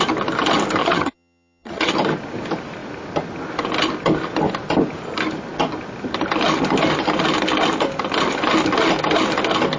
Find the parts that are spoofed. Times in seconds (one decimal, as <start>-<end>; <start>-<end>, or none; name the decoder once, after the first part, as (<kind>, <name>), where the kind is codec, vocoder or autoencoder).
0.8-1.9 (vocoder, HiFi-GAN)